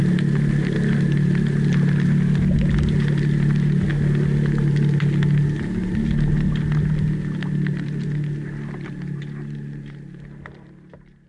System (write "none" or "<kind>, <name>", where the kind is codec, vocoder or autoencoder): none